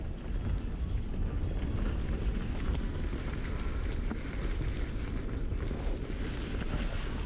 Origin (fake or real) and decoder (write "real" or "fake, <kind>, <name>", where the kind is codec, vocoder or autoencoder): real